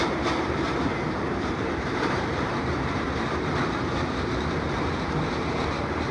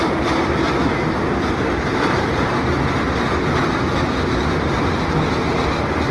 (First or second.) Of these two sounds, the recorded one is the second